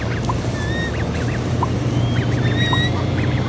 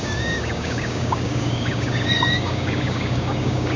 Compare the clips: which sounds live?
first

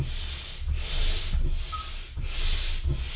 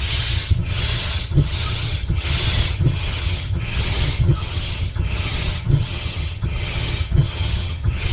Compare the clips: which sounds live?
first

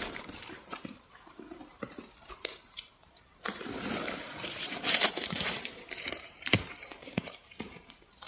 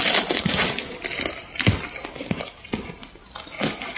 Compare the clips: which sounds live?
second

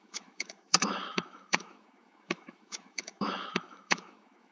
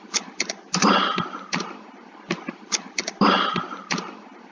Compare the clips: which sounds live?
second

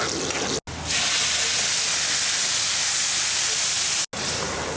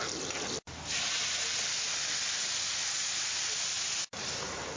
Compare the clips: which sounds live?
first